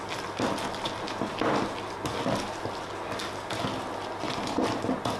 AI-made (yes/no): no